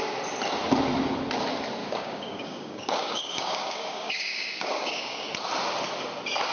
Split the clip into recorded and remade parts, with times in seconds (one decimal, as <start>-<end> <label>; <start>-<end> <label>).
0.0-1.8 recorded; 1.8-5.3 remade; 5.3-6.5 recorded